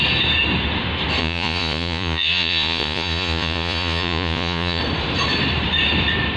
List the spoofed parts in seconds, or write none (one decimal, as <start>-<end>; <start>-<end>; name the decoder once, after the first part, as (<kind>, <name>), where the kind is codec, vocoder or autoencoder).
1.2-4.8 (vocoder, Vocos)